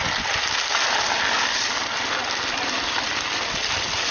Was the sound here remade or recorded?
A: recorded